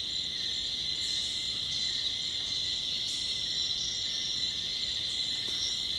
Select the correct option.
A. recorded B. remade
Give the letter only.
A